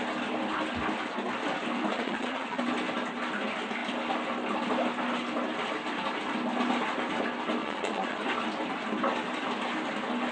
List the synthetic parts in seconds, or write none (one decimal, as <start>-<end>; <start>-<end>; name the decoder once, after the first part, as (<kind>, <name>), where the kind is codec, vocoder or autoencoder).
1.9-2.6 (vocoder, Vocos); 7.6-8.2